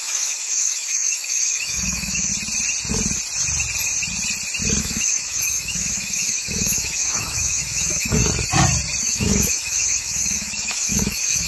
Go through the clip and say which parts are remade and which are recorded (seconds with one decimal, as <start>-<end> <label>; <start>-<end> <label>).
0.0-2.3 remade; 2.3-4.8 recorded; 4.8-8.2 remade; 8.2-9.0 recorded; 9.0-11.5 remade